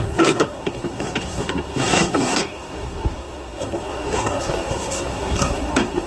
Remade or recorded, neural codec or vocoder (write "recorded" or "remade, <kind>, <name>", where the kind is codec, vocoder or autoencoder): remade, codec, SNAC